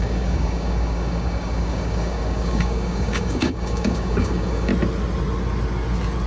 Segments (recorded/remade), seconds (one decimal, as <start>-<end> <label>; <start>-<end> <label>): 0.0-4.7 remade; 4.7-6.3 recorded